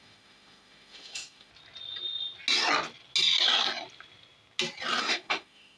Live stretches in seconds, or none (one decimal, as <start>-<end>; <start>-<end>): 1.5-5.0